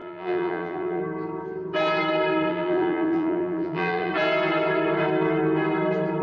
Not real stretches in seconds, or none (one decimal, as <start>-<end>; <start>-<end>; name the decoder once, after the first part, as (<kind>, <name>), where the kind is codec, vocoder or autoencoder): 0.0-1.0 (vocoder, BigVGAN v2); 2.5-4.1